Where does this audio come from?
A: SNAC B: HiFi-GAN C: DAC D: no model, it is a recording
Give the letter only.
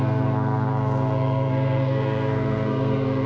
A